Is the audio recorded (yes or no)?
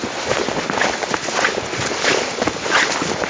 yes